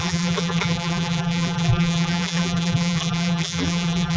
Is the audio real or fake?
fake